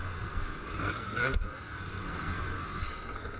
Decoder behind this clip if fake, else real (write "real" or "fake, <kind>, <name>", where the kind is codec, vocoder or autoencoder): fake, codec, SNAC